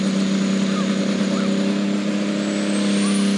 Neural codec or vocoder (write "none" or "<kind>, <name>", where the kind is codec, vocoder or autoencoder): none